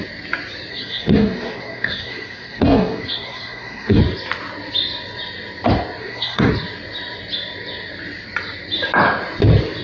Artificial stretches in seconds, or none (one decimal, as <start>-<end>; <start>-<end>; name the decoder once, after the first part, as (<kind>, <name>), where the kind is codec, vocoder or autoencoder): 0.7-4.0 (codec, SNAC); 6.0-6.5